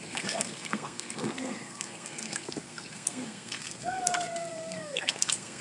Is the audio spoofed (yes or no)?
yes